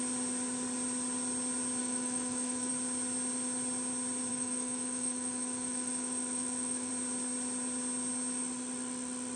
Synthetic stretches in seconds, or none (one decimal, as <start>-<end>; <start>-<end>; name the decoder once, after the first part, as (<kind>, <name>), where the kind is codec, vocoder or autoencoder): 1.8-2.7 (autoencoder, DAC-VAE); 4.3-6.9